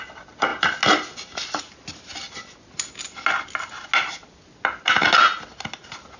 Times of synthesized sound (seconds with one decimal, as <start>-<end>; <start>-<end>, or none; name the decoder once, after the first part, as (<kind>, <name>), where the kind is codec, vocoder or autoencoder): none